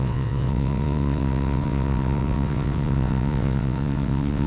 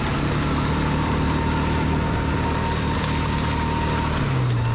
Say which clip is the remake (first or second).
first